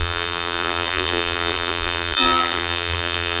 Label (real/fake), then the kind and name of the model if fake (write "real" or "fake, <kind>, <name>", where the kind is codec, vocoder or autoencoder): fake, vocoder, BigVGAN v2